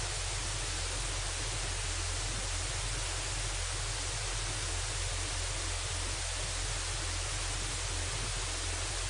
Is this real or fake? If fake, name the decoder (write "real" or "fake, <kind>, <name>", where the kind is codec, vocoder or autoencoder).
real